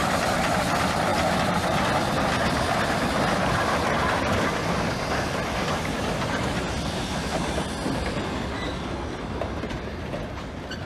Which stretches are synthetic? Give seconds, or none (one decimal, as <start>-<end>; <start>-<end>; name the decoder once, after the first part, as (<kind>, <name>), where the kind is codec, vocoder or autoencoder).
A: 1.1-1.8 (vocoder, BigVGAN v2)